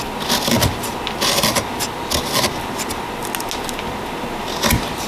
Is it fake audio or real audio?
real